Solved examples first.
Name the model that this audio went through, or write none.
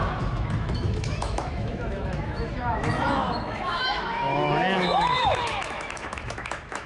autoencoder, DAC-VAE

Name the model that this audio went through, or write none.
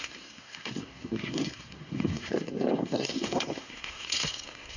codec, SNAC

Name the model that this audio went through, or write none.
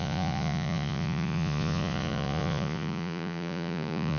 vocoder, Vocos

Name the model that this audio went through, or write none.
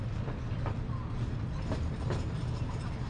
none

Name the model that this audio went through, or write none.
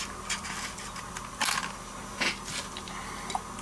none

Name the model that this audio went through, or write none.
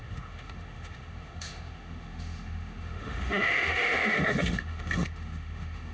autoencoder, DAC-VAE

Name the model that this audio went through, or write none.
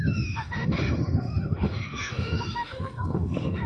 autoencoder, DAC-VAE